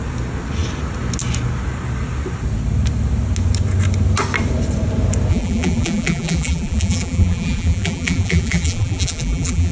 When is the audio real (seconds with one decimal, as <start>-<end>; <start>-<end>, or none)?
0.0-5.3